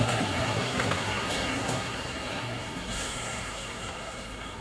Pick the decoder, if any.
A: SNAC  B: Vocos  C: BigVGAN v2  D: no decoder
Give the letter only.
A